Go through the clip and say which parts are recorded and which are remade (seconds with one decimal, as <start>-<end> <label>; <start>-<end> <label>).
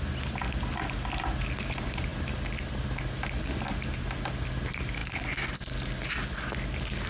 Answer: 0.0-7.1 recorded